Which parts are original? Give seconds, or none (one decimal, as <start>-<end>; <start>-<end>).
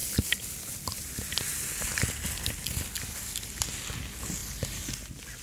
0.0-5.4